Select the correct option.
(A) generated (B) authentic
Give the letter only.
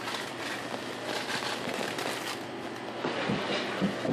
B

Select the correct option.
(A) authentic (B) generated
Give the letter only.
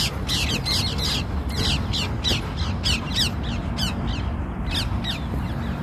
A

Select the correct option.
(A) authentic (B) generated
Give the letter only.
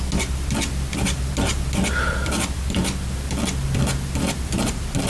A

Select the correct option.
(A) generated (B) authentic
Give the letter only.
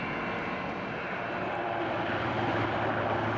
A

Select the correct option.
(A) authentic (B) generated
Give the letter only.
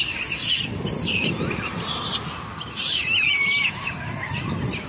B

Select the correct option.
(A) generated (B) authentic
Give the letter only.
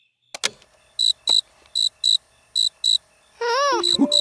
B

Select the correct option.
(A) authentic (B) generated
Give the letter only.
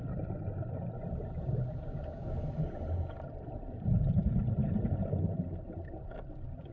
B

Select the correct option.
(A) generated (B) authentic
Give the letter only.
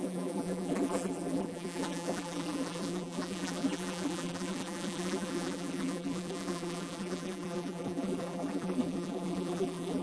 A